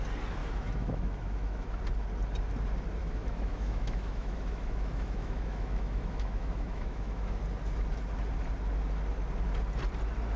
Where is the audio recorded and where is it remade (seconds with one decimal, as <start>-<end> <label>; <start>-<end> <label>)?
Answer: 0.0-0.4 recorded; 0.4-1.8 remade; 1.8-3.0 recorded; 3.0-7.4 remade; 7.4-10.4 recorded